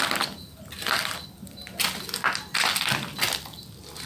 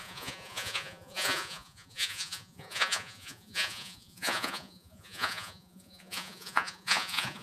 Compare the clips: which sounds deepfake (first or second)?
second